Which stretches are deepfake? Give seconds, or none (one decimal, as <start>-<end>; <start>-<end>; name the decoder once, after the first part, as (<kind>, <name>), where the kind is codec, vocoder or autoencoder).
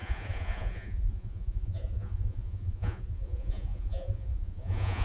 0.0-5.0 (vocoder, Vocos)